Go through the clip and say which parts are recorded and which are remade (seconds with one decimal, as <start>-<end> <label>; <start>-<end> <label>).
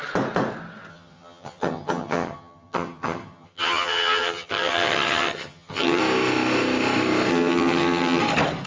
0.0-0.9 recorded; 0.9-6.0 remade; 6.0-7.3 recorded; 7.3-8.2 remade; 8.2-8.7 recorded